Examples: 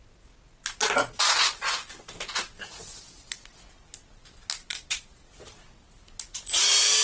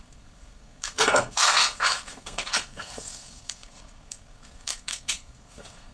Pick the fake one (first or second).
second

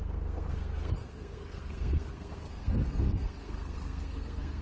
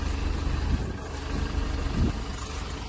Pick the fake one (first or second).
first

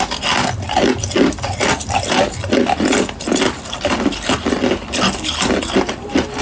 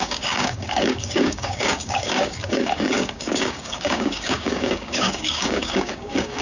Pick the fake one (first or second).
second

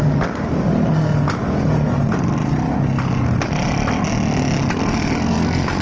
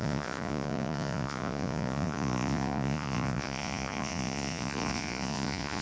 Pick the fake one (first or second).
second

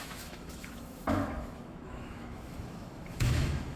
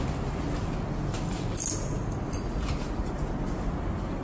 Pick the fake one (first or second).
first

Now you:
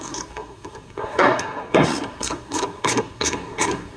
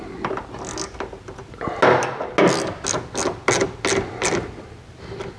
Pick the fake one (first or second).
first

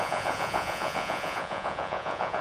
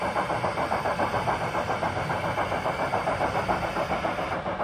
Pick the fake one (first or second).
first